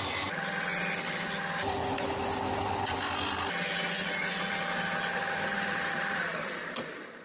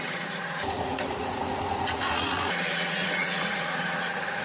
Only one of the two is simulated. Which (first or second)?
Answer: second